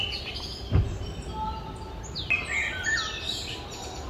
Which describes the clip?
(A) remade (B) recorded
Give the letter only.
B